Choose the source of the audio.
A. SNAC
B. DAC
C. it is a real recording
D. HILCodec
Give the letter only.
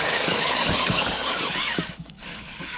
B